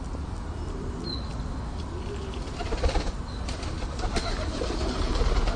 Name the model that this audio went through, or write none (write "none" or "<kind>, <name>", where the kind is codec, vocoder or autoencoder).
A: none